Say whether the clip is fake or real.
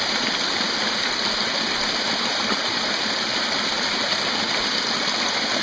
real